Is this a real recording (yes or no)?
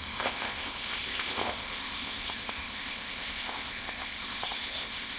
no